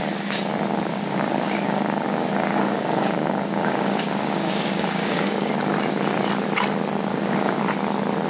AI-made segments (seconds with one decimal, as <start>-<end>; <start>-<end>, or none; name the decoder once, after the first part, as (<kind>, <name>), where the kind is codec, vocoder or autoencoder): 0.9-5.6 (codec, DAC); 7.1-7.6